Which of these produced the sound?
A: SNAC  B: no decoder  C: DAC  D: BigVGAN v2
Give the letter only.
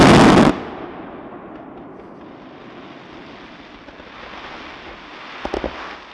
B